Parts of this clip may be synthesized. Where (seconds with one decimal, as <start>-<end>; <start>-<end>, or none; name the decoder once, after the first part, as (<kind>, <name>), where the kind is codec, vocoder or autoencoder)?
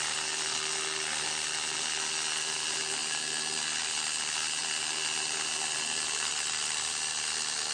4.6-6.3 (vocoder, BigVGAN v2)